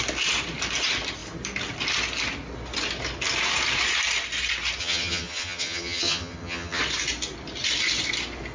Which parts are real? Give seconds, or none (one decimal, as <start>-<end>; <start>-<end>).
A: 0.0-4.8; 6.8-8.5